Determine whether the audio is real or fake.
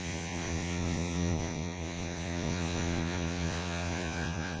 fake